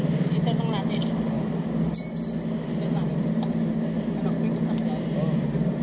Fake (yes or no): no